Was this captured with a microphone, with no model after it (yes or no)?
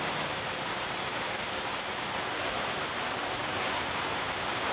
no